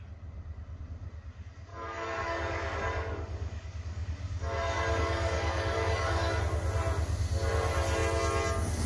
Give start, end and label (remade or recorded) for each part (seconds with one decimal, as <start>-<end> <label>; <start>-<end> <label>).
0.0-1.7 recorded; 1.7-6.4 remade; 6.4-8.9 recorded